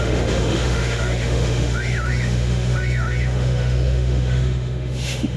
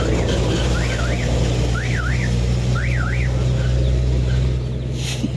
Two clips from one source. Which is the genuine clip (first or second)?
second